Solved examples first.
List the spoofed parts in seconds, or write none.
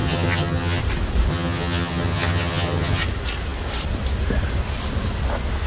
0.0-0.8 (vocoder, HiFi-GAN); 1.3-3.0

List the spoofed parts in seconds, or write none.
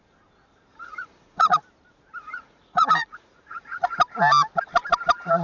0.7-1.5 (vocoder, Vocos); 2.2-4.0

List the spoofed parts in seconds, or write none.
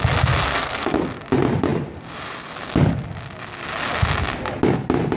0.5-1.0 (codec, SNAC)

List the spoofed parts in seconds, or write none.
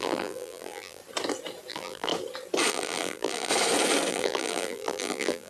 0.0-1.0 (vocoder, BigVGAN v2); 1.7-2.1; 2.7-3.5; 4.1-5.5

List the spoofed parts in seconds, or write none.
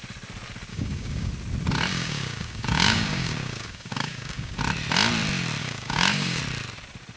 0.7-1.3 (codec, DAC); 1.9-4.6; 5.6-6.4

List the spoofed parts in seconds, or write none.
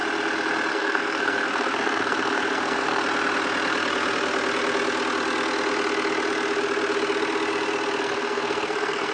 0.7-3.0 (codec, SNAC); 8.0-9.1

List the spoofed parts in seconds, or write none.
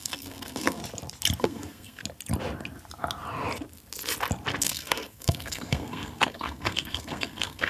0.0-0.8 (codec, SNAC); 1.4-2.0; 4.6-7.7